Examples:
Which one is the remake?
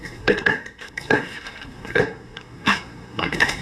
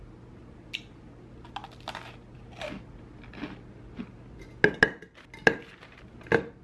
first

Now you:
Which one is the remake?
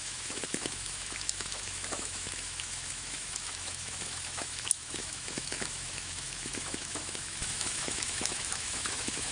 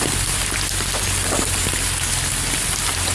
first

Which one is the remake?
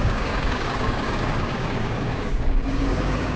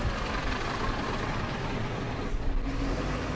first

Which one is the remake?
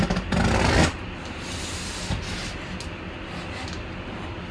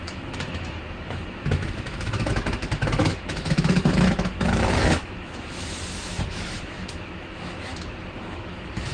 second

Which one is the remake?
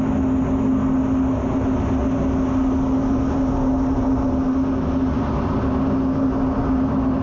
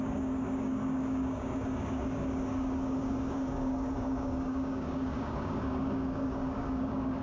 second